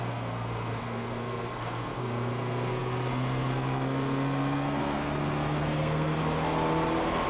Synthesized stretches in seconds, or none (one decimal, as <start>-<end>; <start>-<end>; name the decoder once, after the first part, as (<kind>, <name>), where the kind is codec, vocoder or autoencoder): 0.0-6.2 (codec, SNAC)